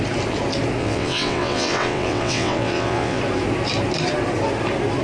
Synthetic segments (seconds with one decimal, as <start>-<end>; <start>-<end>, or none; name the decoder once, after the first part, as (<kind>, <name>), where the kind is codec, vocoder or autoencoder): 0.8-3.2 (vocoder, WaveNeXt)